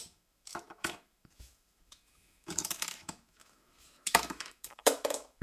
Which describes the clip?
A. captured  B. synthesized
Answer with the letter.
B